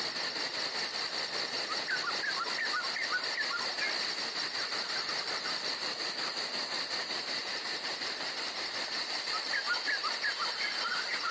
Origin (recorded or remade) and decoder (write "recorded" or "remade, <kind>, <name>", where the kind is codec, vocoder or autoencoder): recorded